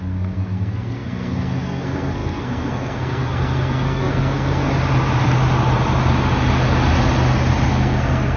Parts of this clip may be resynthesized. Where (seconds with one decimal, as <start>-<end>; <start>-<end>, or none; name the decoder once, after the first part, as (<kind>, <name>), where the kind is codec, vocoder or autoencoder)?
0.0-4.7 (codec, SNAC); 7.7-8.4